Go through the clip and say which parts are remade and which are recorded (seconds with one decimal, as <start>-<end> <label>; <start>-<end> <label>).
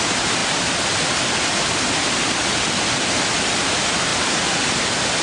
0.0-0.4 remade; 0.4-3.5 recorded; 3.5-5.2 remade